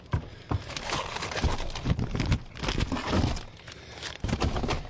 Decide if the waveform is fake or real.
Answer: real